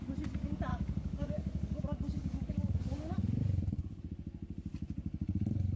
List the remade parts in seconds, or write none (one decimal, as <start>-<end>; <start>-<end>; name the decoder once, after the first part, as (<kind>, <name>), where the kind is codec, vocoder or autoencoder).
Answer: 0.7-1.8 (codec, DAC); 2.2-3.0